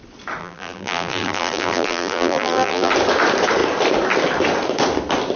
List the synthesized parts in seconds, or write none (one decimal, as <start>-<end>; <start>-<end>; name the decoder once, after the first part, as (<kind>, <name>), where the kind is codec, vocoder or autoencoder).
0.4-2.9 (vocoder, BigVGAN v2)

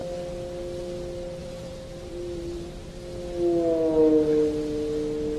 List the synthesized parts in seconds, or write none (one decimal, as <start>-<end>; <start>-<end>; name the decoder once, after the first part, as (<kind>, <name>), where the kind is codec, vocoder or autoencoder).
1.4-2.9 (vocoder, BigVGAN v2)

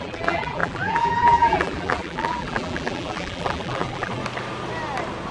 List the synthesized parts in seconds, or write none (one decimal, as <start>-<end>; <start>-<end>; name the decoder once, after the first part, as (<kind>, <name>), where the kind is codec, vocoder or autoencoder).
0.0-4.2 (vocoder, BigVGAN v2)

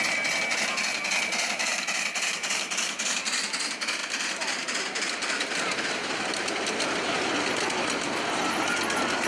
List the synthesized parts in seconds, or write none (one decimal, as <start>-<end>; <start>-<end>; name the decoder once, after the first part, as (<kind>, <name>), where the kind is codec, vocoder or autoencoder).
1.7-3.0 (vocoder, BigVGAN v2); 4.0-9.3

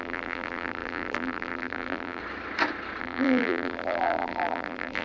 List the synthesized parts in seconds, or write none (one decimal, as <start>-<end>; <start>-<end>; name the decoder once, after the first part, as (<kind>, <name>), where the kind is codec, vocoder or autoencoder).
0.0-2.2 (vocoder, BigVGAN v2); 3.0-5.0